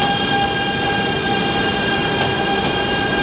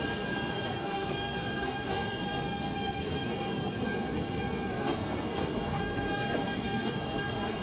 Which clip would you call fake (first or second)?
second